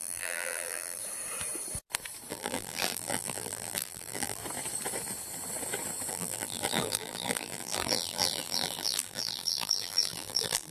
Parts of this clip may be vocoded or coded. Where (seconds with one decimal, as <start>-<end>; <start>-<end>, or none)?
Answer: 0.0-1.0; 2.3-4.4; 6.1-10.7